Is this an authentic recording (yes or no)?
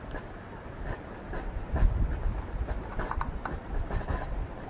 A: no